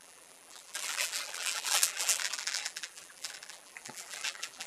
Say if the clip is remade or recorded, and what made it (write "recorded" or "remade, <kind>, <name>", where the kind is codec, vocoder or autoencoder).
remade, vocoder, BigVGAN v2